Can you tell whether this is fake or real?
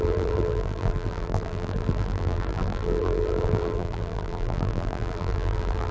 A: fake